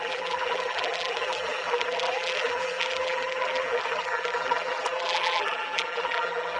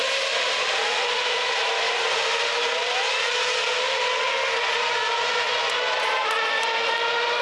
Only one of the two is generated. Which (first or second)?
first